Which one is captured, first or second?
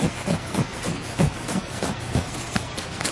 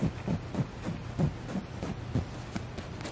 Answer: second